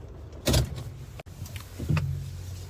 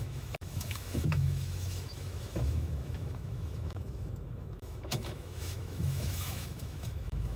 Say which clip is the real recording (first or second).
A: first